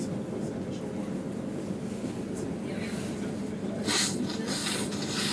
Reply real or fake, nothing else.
real